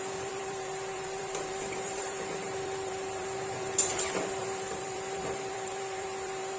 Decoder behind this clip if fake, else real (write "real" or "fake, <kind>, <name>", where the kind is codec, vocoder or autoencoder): fake, vocoder, BigVGAN v2